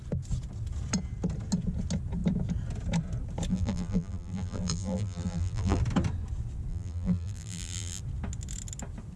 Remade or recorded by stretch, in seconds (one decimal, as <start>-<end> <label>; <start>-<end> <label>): 0.0-3.5 recorded; 3.5-5.8 remade; 5.8-6.7 recorded; 6.7-8.0 remade; 8.0-9.2 recorded

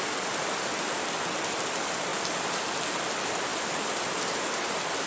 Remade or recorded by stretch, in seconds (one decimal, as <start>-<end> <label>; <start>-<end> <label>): 0.0-2.1 recorded; 2.1-2.6 remade; 2.6-3.5 recorded; 3.5-5.1 remade